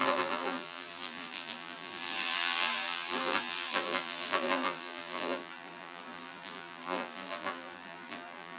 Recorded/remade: remade